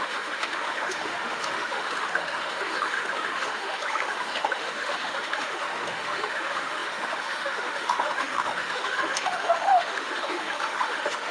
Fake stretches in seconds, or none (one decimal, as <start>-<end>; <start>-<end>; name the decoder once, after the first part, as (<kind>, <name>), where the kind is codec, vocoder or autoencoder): 0.0-11.3 (autoencoder, DAC-VAE)